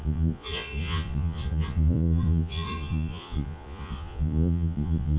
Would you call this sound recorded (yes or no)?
no